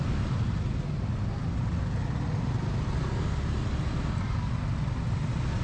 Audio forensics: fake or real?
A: real